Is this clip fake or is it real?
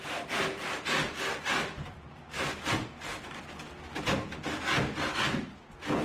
real